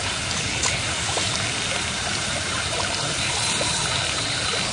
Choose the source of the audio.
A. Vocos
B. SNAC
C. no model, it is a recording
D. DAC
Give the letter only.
C